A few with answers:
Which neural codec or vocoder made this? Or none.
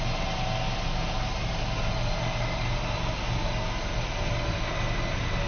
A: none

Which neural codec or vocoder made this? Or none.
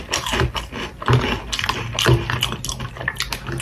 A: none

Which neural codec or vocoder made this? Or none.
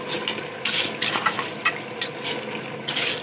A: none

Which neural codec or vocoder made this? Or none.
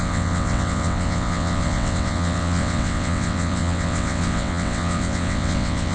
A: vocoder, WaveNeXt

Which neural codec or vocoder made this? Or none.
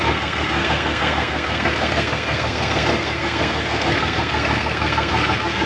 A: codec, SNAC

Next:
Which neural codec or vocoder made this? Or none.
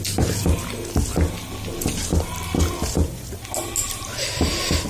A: none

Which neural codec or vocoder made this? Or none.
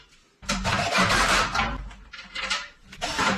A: vocoder, BigVGAN v2